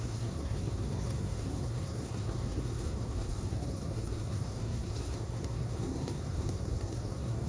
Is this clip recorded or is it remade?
remade